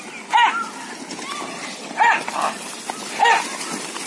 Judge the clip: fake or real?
real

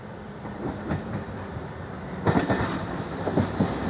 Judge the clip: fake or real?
real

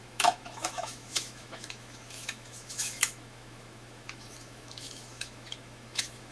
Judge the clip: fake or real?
fake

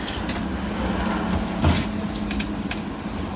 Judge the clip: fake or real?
real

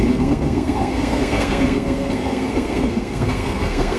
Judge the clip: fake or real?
fake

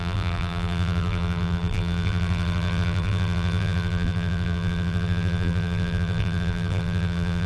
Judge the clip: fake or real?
fake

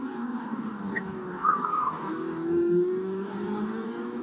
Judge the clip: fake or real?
fake